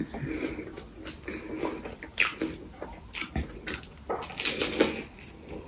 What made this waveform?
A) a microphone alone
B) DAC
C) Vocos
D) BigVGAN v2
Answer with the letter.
A